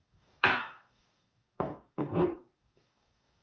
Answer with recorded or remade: remade